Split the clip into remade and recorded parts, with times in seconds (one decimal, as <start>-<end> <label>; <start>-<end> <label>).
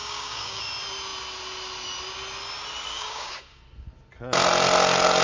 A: 0.0-0.6 remade; 0.6-2.9 recorded; 2.9-3.6 remade; 3.6-5.2 recorded